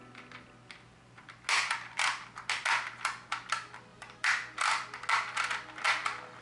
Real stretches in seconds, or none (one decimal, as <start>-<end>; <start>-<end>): 0.0-6.4